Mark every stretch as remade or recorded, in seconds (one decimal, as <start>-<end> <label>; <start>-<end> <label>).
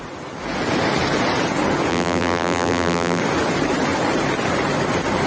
0.0-1.9 recorded; 1.9-3.2 remade; 3.2-5.3 recorded